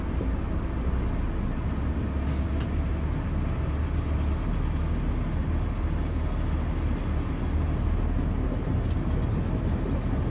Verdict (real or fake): real